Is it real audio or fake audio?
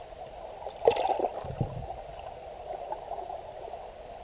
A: real